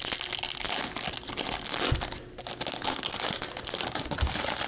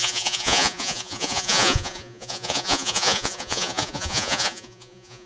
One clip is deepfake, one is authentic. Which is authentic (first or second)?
first